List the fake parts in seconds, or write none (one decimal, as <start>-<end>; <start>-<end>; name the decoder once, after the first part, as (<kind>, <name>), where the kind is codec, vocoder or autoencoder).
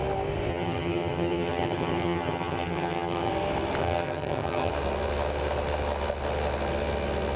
0.5-3.3 (vocoder, HiFi-GAN); 3.8-4.7